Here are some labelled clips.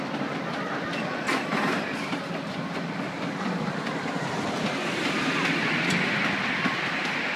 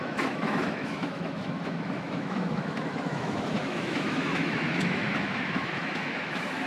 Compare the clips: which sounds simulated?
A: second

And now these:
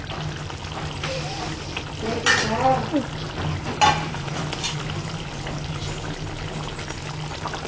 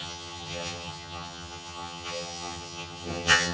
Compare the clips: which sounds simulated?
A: second